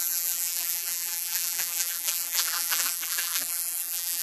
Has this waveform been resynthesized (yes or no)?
yes